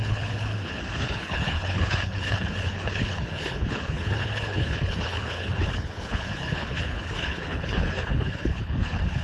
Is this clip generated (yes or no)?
yes